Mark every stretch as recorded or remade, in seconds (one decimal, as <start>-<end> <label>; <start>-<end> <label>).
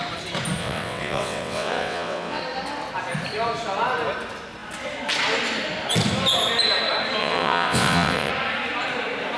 0.0-0.6 recorded; 0.6-2.4 remade; 2.4-7.2 recorded; 7.2-8.3 remade; 8.3-9.4 recorded